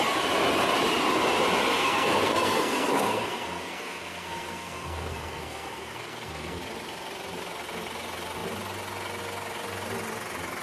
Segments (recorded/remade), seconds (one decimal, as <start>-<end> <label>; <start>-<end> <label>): 0.0-1.8 recorded; 1.8-6.6 remade; 6.6-10.6 recorded